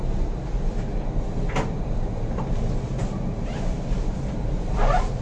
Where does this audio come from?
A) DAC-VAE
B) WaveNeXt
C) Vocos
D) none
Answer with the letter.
D